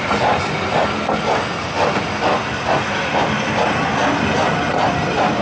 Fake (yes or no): no